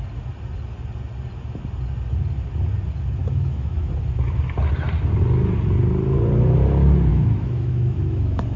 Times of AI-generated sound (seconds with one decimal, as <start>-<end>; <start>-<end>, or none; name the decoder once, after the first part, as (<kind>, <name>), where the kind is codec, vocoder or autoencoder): 3.2-3.9 (autoencoder, DAC-VAE); 7.1-8.6